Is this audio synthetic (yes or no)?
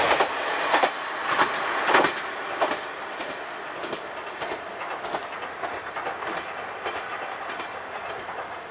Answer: no